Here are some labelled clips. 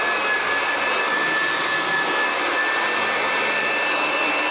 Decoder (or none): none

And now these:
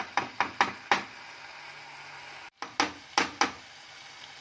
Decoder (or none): none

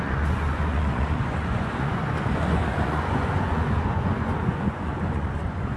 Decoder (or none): vocoder, Vocos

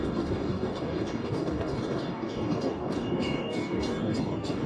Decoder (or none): codec, DAC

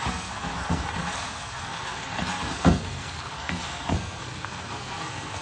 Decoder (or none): codec, SNAC